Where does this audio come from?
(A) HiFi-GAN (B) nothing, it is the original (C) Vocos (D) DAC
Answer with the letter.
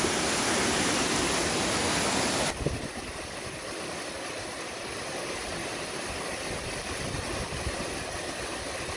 B